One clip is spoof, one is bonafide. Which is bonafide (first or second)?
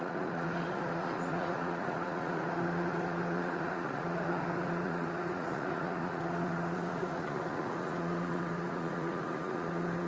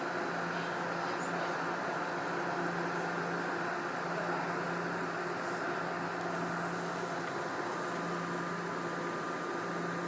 second